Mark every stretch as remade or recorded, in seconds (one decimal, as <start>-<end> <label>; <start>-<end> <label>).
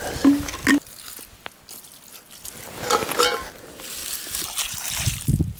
0.0-0.6 remade; 0.6-3.6 recorded; 3.6-4.0 remade; 4.0-4.5 recorded; 4.5-5.6 remade